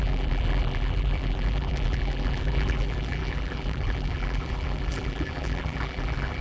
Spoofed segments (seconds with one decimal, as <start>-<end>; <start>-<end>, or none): 0.0-6.4